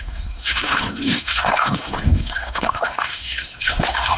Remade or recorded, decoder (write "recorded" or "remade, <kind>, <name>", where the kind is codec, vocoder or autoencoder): remade, codec, SNAC